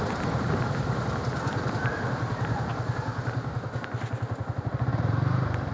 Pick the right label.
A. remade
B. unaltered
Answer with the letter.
B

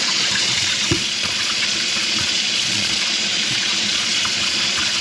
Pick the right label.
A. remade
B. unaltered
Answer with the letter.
A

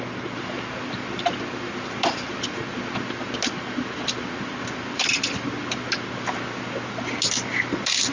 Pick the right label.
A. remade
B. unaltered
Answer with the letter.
B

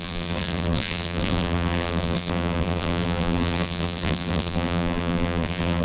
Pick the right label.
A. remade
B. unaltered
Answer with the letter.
A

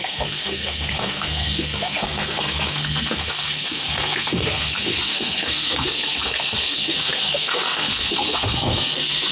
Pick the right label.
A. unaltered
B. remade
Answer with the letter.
B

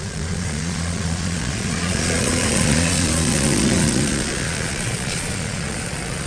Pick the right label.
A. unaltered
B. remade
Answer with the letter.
B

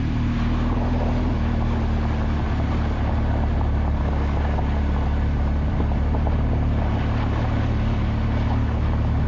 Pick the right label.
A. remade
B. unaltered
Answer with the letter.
B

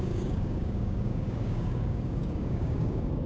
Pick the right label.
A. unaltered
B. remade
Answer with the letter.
B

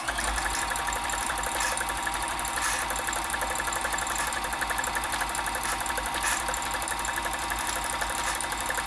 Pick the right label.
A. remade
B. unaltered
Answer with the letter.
B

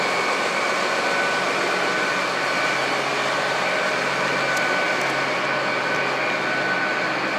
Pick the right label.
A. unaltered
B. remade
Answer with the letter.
A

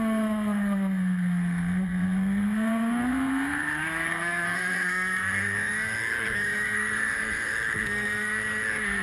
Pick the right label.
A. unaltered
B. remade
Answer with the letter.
B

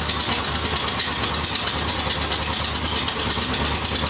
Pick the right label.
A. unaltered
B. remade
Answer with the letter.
A